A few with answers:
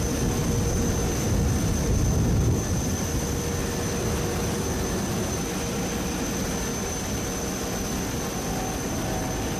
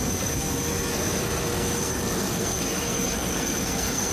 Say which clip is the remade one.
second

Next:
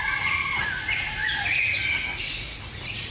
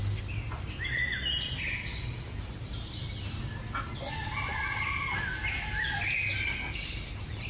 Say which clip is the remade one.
first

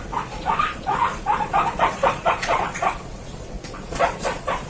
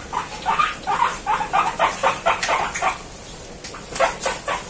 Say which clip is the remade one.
first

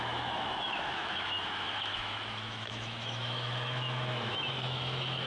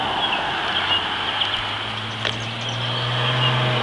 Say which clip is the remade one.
first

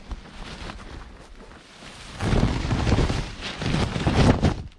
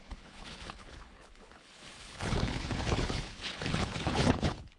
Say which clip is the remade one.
second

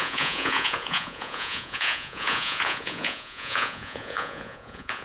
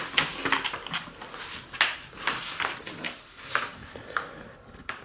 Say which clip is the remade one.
first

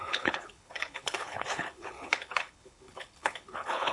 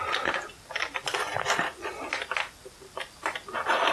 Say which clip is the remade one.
first